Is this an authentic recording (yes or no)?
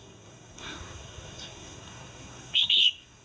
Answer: no